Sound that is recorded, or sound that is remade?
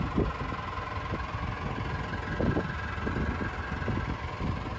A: recorded